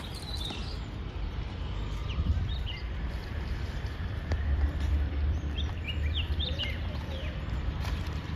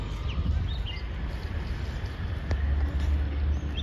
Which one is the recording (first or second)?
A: second